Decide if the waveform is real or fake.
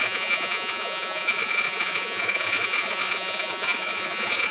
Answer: fake